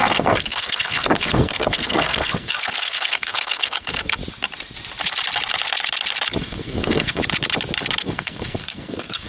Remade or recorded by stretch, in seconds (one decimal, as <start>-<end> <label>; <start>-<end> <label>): 0.0-4.2 remade; 4.2-6.4 recorded; 6.4-7.2 remade; 7.2-8.0 recorded; 8.0-9.3 remade